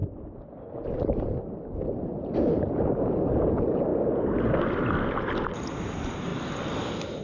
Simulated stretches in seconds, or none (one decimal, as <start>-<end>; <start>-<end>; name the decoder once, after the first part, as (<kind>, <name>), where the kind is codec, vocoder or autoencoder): 1.9-3.9 (vocoder, BigVGAN v2); 5.5-6.3